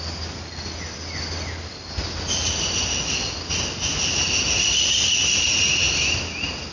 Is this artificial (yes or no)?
no